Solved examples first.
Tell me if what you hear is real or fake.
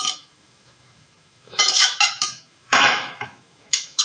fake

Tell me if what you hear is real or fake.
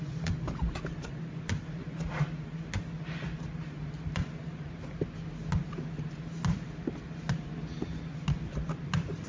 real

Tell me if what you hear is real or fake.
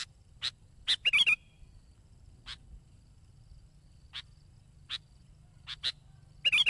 real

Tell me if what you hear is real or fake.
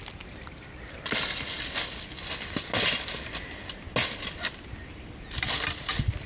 real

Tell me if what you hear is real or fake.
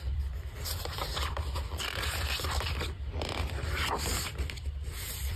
fake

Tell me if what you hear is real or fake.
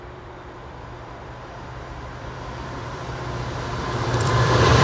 fake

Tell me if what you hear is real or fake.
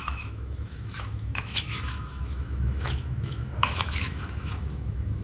fake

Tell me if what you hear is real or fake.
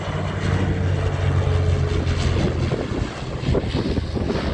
real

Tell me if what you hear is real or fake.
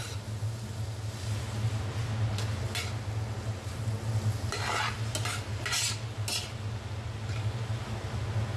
real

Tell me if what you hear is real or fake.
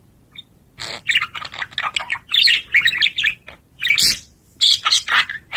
real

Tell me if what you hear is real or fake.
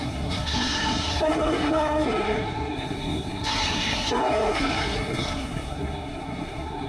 fake